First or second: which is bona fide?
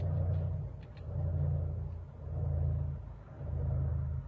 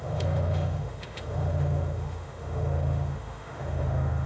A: first